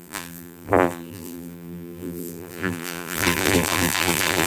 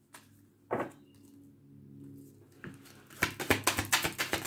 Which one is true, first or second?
second